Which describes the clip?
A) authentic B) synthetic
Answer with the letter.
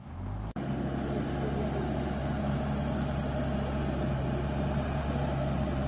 A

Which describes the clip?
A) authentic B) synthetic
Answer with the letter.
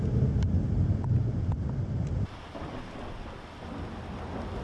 A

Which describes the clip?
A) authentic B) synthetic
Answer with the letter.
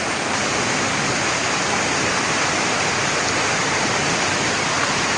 A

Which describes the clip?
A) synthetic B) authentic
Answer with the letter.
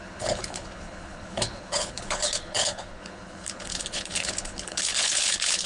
A